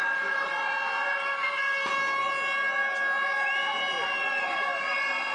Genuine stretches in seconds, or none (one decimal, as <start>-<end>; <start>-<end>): 0.0-5.3